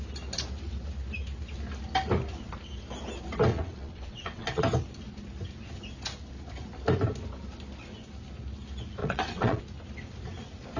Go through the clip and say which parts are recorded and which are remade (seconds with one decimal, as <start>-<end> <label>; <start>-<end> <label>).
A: 0.0-3.5 recorded; 3.5-4.6 remade; 4.6-9.0 recorded; 9.0-9.6 remade; 9.6-10.8 recorded